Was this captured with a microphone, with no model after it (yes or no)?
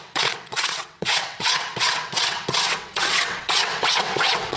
no